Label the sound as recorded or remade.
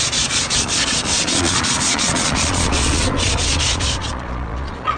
remade